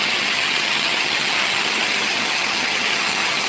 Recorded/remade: remade